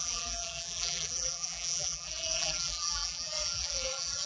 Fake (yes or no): yes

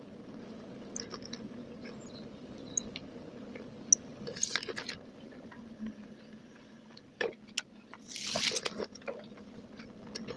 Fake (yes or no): no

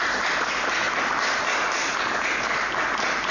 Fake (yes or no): no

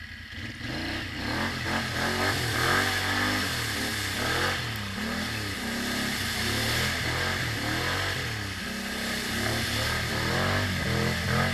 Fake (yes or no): no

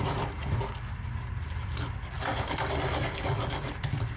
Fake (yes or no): no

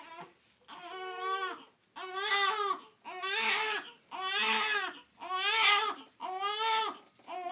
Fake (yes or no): no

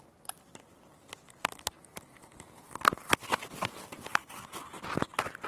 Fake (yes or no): no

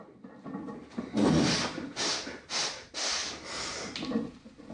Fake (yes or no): no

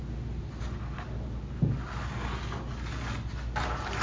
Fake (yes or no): no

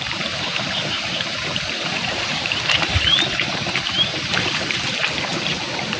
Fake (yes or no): yes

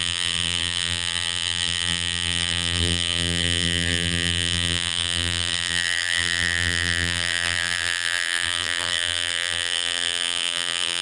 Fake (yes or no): yes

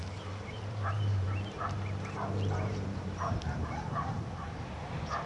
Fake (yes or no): yes